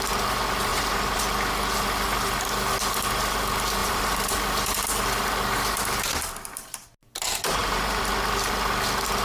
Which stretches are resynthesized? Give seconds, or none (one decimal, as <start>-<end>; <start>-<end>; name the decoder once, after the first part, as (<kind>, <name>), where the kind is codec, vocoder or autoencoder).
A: 0.7-1.2 (vocoder, BigVGAN v2); 3.8-4.4; 7.6-8.1